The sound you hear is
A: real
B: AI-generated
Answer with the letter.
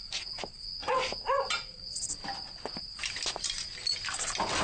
A